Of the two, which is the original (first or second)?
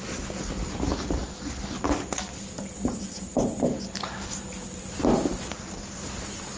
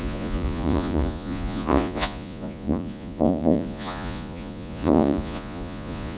first